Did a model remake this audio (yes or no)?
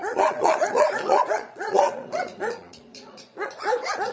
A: yes